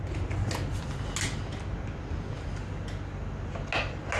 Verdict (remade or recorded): recorded